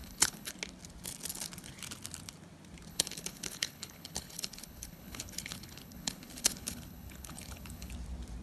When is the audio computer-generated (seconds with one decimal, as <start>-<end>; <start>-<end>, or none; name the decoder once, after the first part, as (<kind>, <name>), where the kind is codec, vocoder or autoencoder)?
0.0-0.5 (codec, HILCodec); 2.9-7.9